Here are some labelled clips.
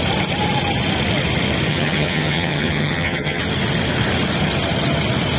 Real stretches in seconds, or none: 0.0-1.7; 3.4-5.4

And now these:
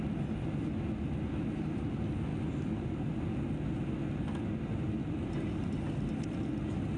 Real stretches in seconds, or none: 0.0-7.0